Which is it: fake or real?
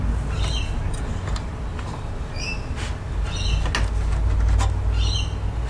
real